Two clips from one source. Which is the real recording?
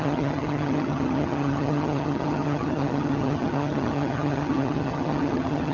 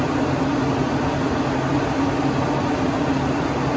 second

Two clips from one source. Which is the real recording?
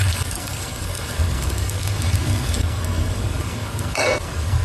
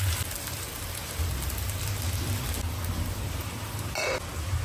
second